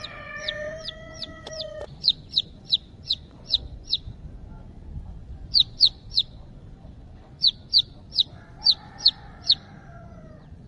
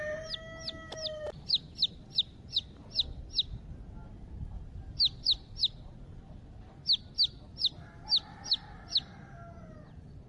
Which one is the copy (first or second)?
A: first